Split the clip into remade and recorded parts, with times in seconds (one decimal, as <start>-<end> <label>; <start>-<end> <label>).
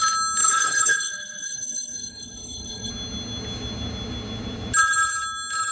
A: 0.0-0.4 recorded; 0.4-2.9 remade; 2.9-5.7 recorded